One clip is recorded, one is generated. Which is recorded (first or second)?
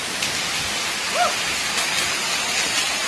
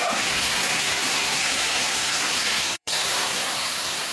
first